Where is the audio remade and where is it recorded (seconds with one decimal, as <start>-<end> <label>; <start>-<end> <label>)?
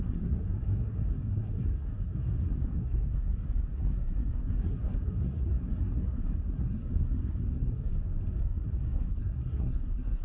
0.0-7.9 remade; 7.9-8.4 recorded; 8.4-10.2 remade